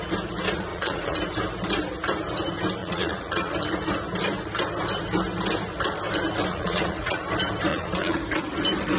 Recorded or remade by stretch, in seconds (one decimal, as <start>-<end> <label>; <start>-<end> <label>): 0.0-0.7 recorded; 0.7-1.2 remade; 1.2-2.8 recorded; 2.8-3.5 remade; 3.5-6.5 recorded; 6.5-7.2 remade; 7.2-7.7 recorded; 7.7-8.2 remade; 8.2-9.0 recorded